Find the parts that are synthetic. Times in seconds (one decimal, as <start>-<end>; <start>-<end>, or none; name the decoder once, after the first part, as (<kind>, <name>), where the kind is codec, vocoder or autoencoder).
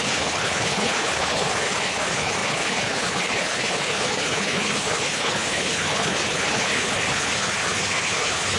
0.0-8.6 (codec, HILCodec)